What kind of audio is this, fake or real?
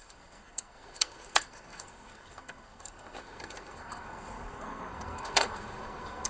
fake